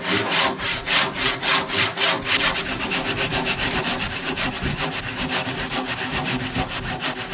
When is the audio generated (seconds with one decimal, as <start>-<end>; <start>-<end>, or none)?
none